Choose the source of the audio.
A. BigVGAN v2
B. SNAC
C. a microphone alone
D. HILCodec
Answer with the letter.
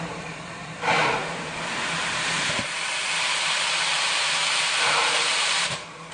A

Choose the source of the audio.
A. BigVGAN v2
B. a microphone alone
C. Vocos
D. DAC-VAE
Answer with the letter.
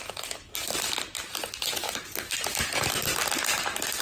B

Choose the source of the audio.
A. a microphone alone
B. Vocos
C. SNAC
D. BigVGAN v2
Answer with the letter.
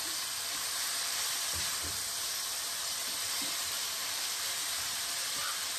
D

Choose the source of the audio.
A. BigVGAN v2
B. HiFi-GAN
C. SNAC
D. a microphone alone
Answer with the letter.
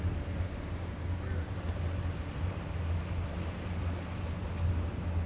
D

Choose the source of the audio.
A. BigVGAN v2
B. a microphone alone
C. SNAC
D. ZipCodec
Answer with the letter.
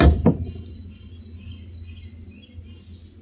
B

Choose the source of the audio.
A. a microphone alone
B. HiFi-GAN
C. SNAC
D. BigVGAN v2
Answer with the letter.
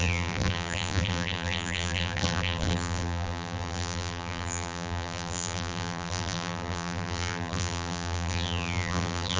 D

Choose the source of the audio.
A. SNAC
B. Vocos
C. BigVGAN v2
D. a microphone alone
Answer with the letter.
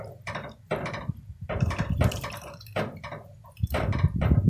C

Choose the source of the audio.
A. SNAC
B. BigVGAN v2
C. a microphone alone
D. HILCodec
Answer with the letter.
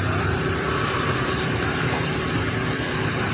B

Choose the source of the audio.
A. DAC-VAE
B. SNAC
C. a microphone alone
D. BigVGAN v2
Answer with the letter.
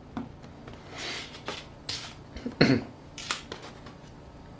C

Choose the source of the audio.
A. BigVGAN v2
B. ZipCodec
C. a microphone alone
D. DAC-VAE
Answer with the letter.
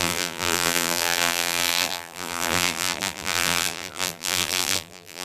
A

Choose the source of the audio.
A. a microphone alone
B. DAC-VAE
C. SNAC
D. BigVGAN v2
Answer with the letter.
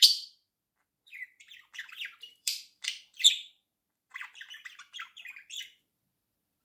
D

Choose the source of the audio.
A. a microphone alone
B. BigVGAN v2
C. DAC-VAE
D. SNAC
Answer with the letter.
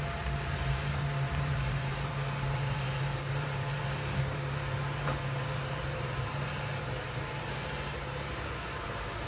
B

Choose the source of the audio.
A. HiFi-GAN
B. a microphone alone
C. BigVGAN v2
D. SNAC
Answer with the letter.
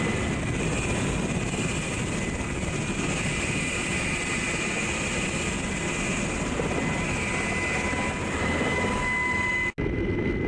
B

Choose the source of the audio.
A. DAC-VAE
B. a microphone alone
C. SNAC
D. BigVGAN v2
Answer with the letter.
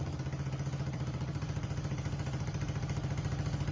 D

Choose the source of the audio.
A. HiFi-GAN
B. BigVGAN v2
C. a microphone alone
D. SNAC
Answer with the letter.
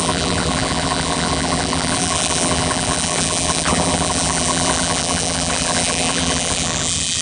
B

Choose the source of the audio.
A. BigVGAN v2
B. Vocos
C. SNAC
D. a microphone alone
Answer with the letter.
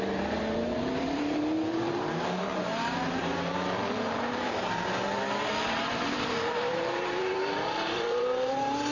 A